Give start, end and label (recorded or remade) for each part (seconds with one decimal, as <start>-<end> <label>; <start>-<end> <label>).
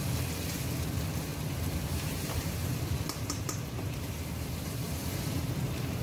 0.0-1.3 recorded; 1.3-4.9 remade; 4.9-6.0 recorded